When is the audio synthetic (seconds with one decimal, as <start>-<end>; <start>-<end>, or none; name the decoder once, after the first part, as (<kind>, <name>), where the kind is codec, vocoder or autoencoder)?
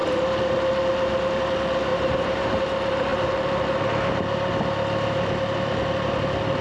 1.9-2.6 (vocoder, BigVGAN v2)